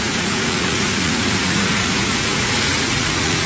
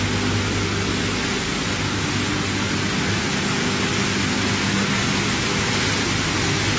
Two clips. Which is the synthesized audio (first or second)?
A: first